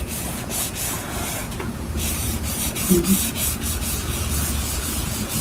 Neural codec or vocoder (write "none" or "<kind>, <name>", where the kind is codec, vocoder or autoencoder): vocoder, Vocos